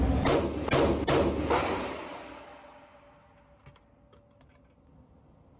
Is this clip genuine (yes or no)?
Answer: yes